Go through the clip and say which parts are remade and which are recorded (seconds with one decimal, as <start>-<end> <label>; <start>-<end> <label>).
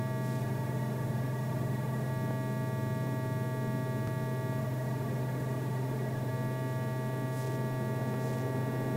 0.0-0.4 recorded; 0.4-2.1 remade; 2.1-4.6 recorded; 4.6-6.3 remade; 6.3-9.0 recorded